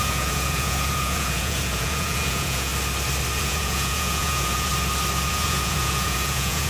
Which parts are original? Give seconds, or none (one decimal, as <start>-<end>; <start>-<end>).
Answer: 2.7-3.4; 4.7-5.3